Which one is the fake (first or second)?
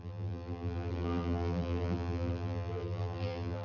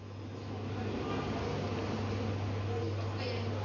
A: first